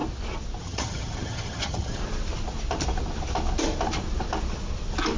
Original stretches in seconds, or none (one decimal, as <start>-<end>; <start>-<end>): 0.0-0.6; 2.0-5.2